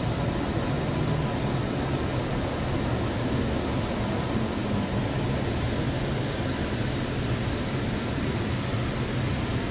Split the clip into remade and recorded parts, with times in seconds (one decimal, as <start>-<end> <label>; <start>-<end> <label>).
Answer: 0.0-9.7 recorded